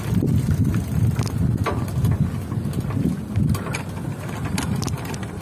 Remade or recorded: recorded